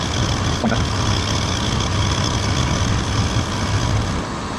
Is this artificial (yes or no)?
no